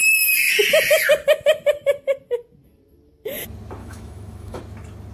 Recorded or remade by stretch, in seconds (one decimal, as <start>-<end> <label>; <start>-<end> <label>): 0.0-3.8 recorded; 3.8-4.6 remade; 4.6-5.1 recorded